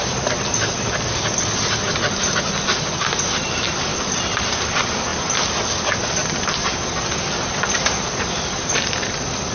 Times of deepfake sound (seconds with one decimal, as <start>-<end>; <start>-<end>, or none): 3.9-4.6